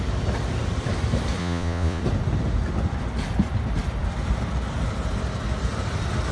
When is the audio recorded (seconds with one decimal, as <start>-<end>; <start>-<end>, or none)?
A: 0.0-1.4; 2.0-6.3